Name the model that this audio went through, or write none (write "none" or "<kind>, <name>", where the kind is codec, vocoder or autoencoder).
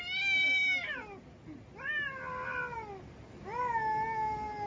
none